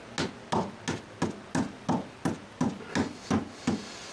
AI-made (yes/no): no